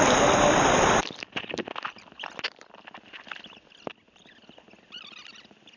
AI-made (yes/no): no